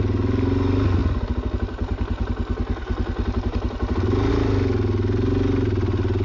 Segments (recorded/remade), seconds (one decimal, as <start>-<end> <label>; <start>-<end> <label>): 0.0-6.2 recorded